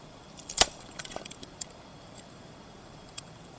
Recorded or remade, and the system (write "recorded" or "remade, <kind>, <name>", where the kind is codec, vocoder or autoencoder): remade, vocoder, BigVGAN v2